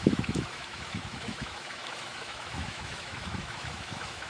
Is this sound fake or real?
fake